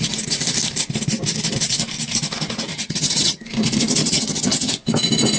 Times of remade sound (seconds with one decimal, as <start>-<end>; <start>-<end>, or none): 2.7-3.4; 4.0-4.7